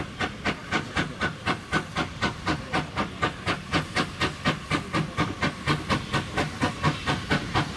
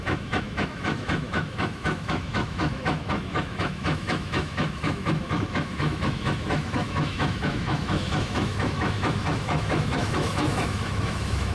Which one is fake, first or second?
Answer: second